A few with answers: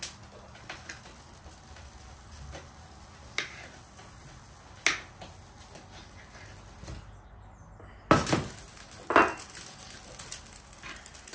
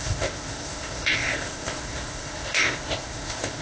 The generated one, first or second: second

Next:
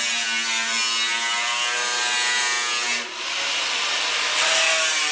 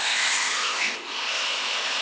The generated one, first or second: second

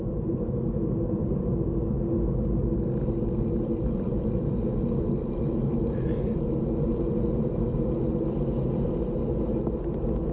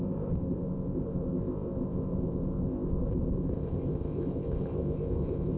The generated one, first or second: second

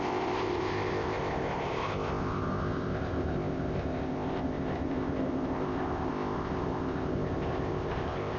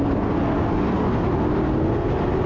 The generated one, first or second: first